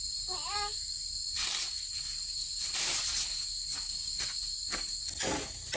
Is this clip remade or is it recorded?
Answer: recorded